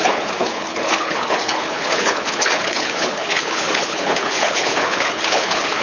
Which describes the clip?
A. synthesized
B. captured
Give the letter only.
A